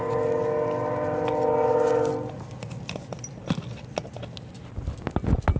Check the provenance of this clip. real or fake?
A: real